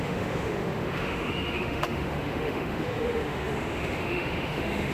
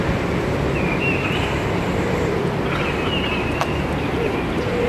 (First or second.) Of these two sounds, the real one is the second